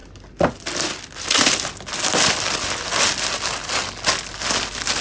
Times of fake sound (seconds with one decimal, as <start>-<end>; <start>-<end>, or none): none